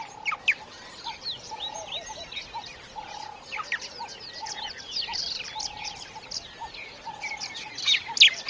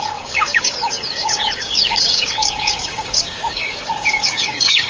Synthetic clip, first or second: second